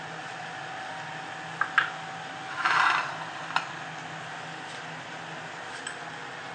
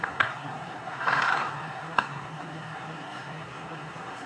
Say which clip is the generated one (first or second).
second